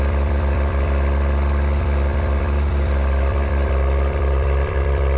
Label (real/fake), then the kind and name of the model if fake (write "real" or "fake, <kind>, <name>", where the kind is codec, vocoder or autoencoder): fake, vocoder, BigVGAN v2